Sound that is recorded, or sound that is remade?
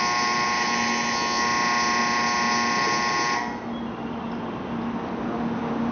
recorded